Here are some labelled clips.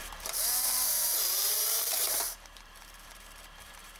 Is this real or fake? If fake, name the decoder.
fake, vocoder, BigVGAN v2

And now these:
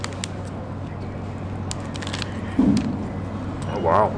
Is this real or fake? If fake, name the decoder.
real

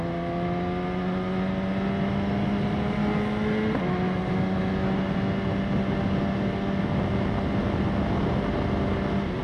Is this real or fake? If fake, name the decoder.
real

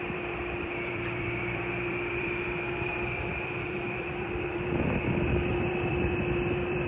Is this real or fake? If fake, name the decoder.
fake, vocoder, BigVGAN v2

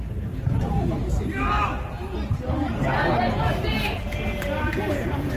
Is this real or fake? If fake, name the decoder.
real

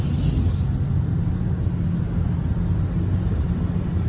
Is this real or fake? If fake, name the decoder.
real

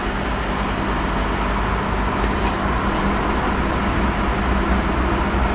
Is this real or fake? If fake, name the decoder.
real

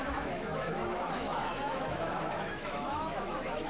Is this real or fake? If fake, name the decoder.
fake, autoencoder, DAC-VAE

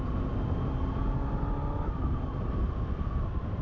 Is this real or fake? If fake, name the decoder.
real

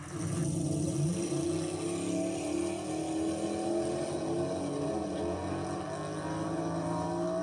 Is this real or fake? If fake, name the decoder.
real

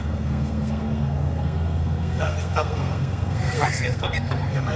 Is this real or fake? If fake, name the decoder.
fake, codec, SNAC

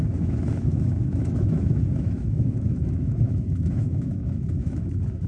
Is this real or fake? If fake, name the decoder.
fake, autoencoder, DAC-VAE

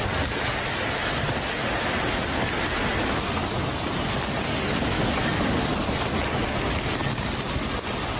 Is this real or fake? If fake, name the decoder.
real